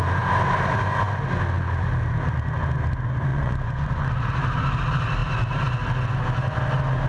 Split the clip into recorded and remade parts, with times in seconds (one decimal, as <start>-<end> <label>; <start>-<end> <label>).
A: 0.0-3.3 recorded; 3.3-4.1 remade; 4.1-7.1 recorded